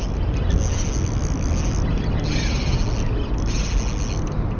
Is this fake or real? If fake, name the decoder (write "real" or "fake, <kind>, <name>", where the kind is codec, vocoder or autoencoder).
real